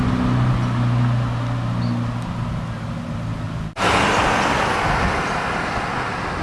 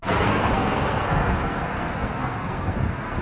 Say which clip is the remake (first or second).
second